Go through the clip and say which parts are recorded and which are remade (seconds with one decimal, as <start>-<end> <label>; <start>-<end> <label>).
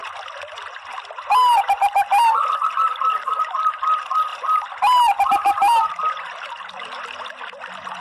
0.0-8.0 recorded